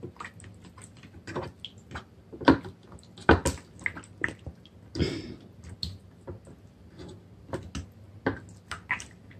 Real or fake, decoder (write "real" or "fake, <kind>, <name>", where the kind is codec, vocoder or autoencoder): real